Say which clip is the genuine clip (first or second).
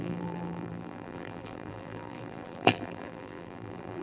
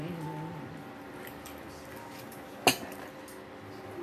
second